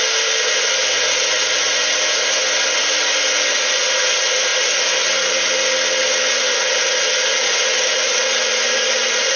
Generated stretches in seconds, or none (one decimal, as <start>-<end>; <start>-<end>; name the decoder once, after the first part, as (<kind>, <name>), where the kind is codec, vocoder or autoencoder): none